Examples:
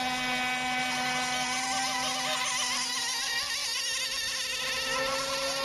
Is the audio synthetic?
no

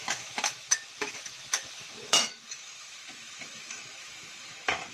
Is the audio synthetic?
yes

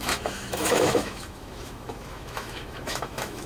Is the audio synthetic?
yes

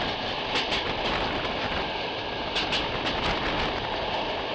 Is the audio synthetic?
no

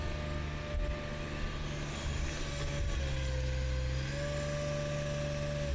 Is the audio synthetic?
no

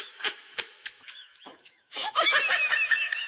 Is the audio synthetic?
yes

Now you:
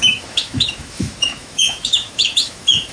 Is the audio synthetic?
yes